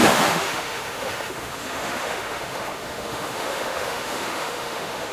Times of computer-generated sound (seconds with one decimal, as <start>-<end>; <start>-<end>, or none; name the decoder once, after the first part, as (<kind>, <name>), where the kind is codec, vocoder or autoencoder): 0.0-5.1 (autoencoder, DAC-VAE)